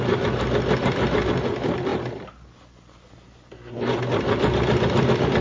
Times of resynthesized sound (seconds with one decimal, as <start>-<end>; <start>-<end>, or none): none